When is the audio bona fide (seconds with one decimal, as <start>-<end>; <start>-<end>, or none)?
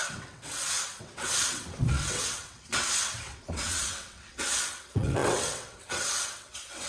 none